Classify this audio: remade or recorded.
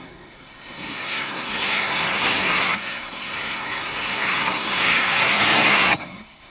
remade